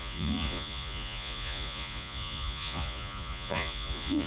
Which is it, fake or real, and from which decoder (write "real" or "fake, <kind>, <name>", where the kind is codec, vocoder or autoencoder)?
fake, vocoder, Vocos